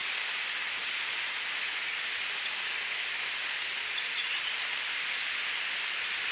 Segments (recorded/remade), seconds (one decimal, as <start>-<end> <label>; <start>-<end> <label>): 0.0-6.3 recorded